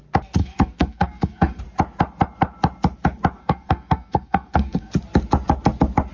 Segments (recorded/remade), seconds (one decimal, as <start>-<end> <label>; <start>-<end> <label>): 0.0-0.4 recorded; 0.4-1.6 remade; 1.6-3.4 recorded; 3.4-4.9 remade; 4.9-6.1 recorded